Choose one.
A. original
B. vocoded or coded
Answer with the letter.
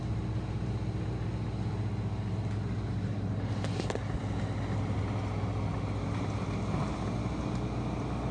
A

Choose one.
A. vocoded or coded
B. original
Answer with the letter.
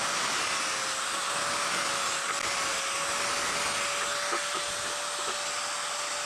B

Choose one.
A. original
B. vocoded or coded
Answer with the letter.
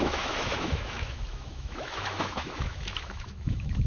B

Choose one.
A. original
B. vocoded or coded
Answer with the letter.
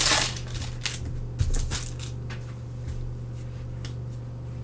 A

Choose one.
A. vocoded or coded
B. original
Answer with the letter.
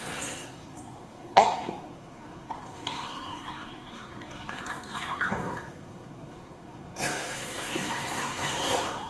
A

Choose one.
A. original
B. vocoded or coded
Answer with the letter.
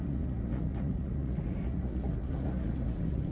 B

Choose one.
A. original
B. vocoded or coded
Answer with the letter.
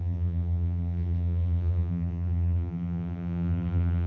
B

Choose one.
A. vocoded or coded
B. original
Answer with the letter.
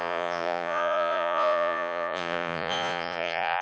A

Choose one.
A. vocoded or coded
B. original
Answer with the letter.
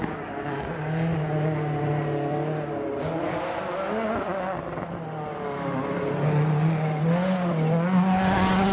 B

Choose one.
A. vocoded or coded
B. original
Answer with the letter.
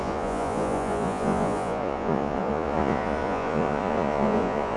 A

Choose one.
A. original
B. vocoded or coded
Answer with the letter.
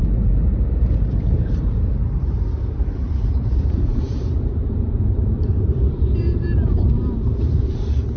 B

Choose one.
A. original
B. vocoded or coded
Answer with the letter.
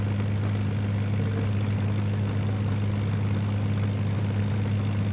B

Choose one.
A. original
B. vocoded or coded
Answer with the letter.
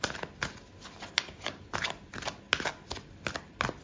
A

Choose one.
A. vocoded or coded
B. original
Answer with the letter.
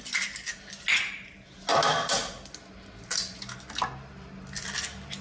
B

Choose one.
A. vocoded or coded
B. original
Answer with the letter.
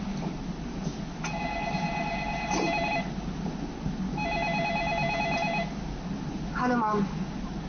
B